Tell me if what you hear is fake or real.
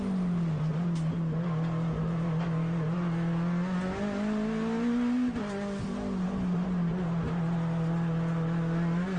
real